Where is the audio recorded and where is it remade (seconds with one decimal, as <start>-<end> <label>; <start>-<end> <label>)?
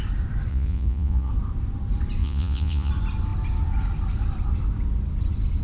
0.0-0.5 recorded; 0.5-1.3 remade; 1.3-2.2 recorded; 2.2-2.9 remade; 2.9-5.6 recorded